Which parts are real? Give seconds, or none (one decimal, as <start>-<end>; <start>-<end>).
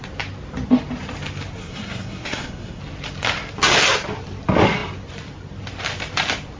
0.0-1.6; 2.8-6.6